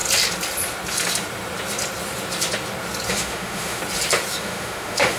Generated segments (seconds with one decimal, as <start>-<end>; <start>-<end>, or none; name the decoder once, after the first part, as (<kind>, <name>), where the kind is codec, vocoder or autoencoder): 3.1-3.8 (autoencoder, DAC-VAE); 4.4-5.2